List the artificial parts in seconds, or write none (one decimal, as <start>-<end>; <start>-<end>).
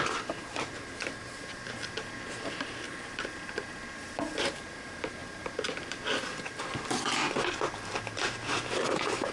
0.0-9.3